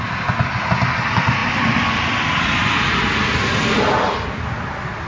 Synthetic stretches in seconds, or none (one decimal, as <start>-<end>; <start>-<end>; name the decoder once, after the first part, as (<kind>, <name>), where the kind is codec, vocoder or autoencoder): none